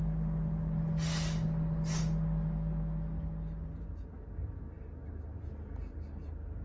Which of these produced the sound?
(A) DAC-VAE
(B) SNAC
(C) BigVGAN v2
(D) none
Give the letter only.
D